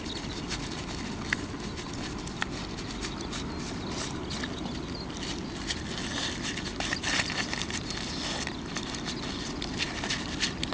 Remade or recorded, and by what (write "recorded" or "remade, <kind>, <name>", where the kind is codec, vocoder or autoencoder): recorded